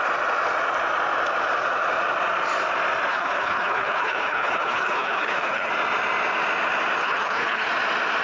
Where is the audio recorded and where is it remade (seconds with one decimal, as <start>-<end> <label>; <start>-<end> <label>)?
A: 0.0-3.1 recorded; 3.1-5.7 remade; 5.7-7.0 recorded; 7.0-7.7 remade; 7.7-8.2 recorded